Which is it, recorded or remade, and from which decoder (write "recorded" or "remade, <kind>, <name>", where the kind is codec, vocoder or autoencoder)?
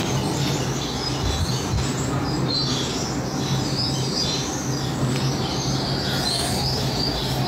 recorded